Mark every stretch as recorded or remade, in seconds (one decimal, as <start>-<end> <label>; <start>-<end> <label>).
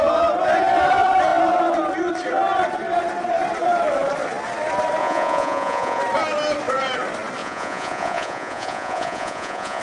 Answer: 0.0-5.0 recorded; 5.0-6.0 remade; 6.0-7.4 recorded; 7.4-9.8 remade